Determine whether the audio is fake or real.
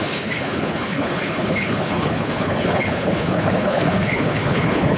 fake